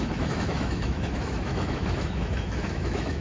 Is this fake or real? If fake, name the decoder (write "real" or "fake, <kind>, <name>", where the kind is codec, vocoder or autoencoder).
fake, autoencoder, DAC-VAE